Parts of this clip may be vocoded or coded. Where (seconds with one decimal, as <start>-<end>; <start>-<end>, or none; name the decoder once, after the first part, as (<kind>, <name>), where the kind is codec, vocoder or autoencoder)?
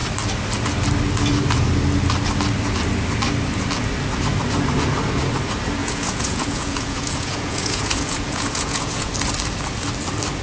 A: 5.8-9.1 (vocoder, Vocos)